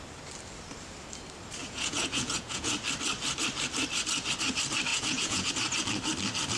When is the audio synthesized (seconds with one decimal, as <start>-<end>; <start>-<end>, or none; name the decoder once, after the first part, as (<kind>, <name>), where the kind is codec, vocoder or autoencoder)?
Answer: 1.6-2.7 (vocoder, Vocos); 4.9-5.5